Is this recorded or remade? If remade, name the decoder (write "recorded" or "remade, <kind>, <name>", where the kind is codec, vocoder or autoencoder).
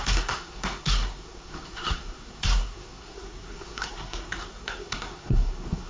remade, codec, SNAC